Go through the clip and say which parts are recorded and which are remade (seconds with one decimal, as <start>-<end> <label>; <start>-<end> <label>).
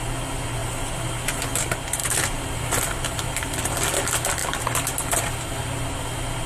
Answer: 0.0-0.6 recorded; 0.6-1.4 remade; 1.4-2.0 recorded; 2.0-3.6 remade; 3.6-6.5 recorded